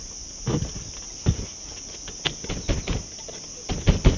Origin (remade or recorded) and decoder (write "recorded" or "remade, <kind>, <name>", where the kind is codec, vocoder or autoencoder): recorded